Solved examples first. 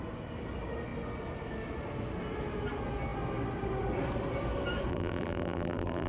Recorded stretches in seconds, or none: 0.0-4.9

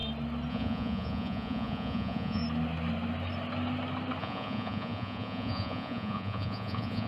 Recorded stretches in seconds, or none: 0.0-0.5; 2.4-4.2

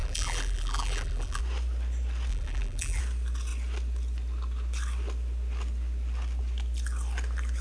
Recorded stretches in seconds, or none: 1.4-2.3; 3.0-7.6

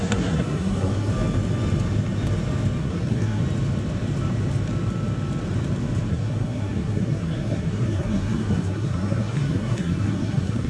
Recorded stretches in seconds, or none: 1.1-2.8; 3.4-6.1

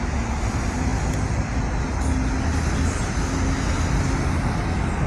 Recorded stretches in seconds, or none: 0.0-5.1

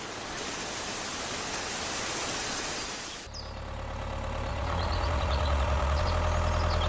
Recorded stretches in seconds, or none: 0.0-4.5; 6.0-6.9